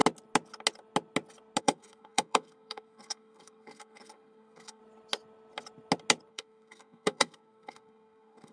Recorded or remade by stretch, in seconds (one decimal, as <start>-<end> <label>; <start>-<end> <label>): 0.0-1.6 recorded; 1.6-4.8 remade; 4.8-6.3 recorded; 6.3-8.5 remade